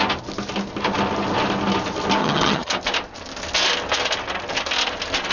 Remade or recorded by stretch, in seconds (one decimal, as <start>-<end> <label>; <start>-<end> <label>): 0.0-2.2 recorded; 2.2-2.7 remade; 2.7-5.3 recorded